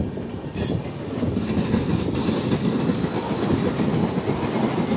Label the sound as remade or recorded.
recorded